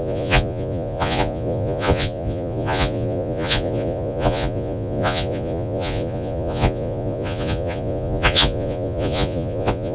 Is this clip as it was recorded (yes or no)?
no